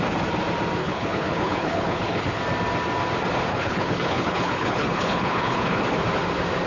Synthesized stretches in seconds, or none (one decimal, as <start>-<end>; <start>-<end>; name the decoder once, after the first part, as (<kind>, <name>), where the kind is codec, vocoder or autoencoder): 0.8-2.4 (codec, HILCodec); 3.5-5.8